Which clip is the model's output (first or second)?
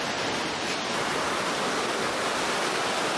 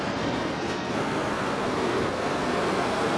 second